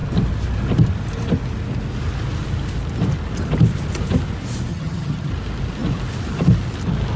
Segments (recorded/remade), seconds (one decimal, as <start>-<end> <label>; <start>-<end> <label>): 0.0-4.7 recorded; 4.7-5.3 remade; 5.3-7.2 recorded